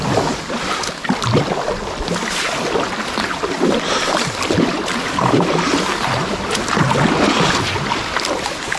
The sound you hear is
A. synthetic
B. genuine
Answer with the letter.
B